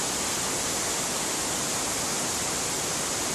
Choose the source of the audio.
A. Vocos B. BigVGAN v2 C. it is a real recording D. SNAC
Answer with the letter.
C